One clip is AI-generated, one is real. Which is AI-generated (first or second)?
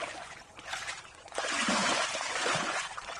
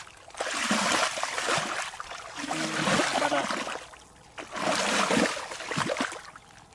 first